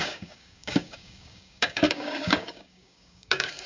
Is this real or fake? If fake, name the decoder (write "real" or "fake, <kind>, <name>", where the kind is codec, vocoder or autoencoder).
fake, codec, DAC